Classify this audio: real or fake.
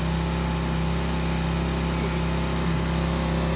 real